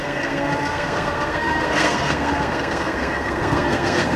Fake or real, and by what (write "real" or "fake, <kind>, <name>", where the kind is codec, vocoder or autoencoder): fake, codec, SNAC